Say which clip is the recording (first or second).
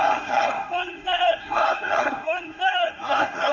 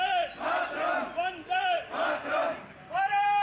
second